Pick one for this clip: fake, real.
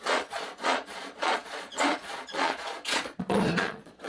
fake